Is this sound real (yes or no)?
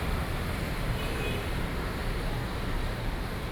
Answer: no